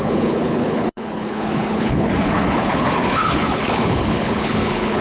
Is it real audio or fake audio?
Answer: fake